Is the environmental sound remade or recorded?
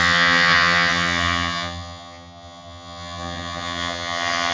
remade